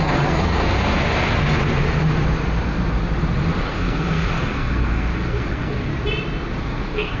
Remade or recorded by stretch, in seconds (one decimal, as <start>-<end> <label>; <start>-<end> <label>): 0.0-0.6 remade; 0.6-3.6 recorded; 3.6-5.9 remade; 5.9-6.6 recorded; 6.6-7.2 remade